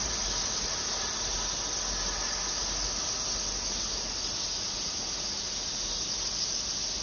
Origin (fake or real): real